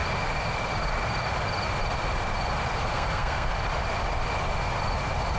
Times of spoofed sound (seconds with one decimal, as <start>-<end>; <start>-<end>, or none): 2.9-3.5